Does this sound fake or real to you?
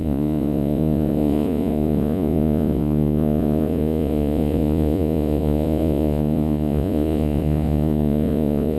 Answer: fake